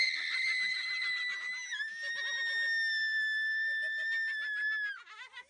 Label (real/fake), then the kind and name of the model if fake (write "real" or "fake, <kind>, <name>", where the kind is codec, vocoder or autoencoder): real